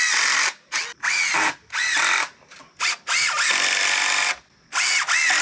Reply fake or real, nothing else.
real